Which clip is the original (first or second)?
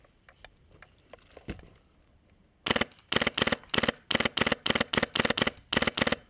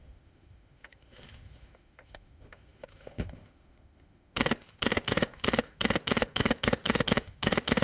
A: first